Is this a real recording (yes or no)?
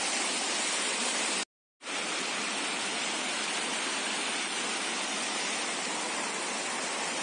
yes